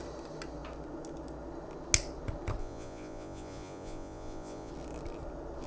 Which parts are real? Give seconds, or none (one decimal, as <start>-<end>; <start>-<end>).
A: 0.0-2.6; 4.7-5.7